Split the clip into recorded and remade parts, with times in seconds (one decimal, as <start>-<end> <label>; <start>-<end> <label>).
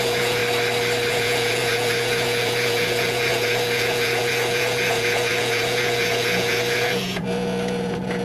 0.0-0.4 remade; 0.4-1.1 recorded; 1.1-8.2 remade